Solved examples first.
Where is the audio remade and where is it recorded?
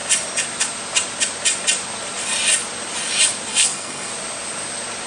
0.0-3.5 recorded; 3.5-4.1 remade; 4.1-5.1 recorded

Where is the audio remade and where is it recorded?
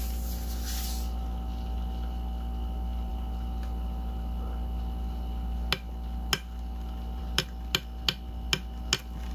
0.0-9.3 recorded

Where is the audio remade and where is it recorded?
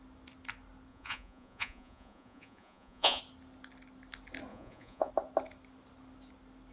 0.0-0.9 recorded; 0.9-3.2 remade; 3.2-4.5 recorded; 4.5-5.1 remade; 5.1-6.7 recorded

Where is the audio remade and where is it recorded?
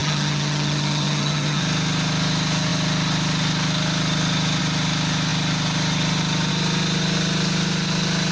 0.0-1.6 remade; 1.6-8.3 recorded